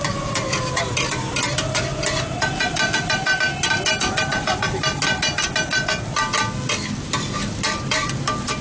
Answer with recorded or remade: recorded